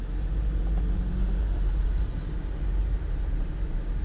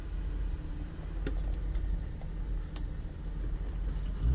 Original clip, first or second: second